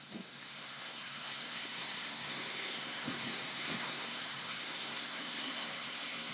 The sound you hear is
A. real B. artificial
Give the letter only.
B